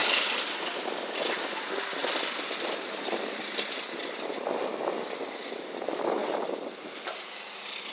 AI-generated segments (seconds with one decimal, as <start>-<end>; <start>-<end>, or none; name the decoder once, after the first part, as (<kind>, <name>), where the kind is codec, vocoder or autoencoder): 0.0-1.1 (vocoder, BigVGAN v2); 2.0-4.7; 6.2-7.5

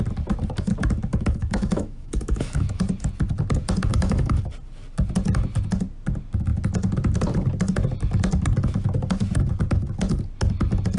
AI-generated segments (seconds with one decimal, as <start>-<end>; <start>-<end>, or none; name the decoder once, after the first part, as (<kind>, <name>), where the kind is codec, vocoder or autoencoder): 1.1-2.8 (autoencoder, DAC-VAE); 3.9-4.4

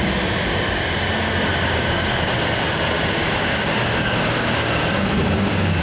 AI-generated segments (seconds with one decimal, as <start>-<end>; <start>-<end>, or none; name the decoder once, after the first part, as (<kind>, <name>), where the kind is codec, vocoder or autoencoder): 1.5-2.3 (codec, DAC); 3.2-5.8

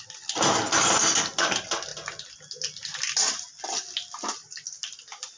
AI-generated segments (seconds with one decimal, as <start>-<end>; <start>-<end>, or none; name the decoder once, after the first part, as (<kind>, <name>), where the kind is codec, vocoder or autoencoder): none

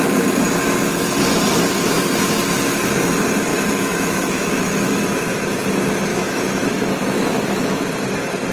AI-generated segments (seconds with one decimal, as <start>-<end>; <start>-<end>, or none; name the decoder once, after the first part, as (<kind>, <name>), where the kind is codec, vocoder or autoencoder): 3.5-5.0 (autoencoder, DAC-VAE); 6.1-7.8

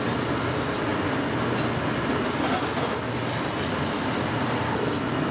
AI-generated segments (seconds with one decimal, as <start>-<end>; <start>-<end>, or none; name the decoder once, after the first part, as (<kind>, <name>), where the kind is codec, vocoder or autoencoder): none

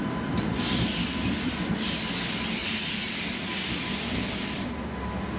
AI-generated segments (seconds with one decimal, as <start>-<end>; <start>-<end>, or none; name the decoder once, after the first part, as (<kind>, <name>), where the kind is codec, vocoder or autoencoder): 2.6-3.1 (vocoder, Vocos)